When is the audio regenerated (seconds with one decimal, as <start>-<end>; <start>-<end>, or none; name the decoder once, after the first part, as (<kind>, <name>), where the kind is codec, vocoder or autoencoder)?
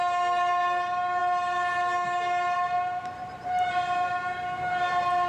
none